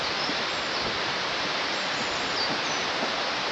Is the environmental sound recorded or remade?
recorded